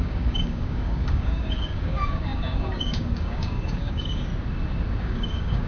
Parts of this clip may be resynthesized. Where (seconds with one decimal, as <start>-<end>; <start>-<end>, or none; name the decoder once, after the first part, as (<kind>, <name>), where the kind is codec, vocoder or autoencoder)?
0.0-4.3 (codec, DAC); 5.0-5.7